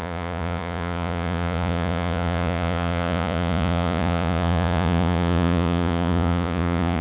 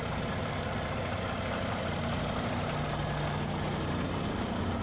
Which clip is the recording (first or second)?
second